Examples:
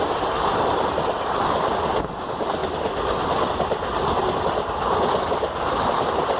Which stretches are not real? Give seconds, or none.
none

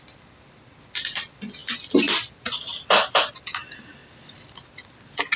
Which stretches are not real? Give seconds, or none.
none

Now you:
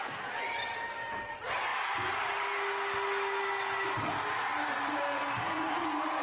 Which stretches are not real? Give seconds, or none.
none